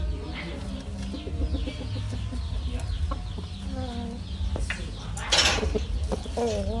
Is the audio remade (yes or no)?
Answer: no